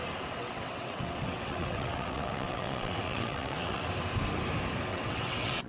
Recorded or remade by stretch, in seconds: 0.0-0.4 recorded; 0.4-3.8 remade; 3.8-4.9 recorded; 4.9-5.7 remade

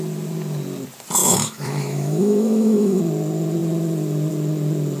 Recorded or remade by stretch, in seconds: 0.0-1.2 recorded; 1.2-3.0 remade; 3.0-5.0 recorded

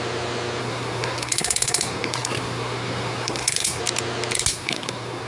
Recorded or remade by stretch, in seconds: 0.0-0.6 recorded; 0.6-3.8 remade; 3.8-4.5 recorded; 4.5-5.3 remade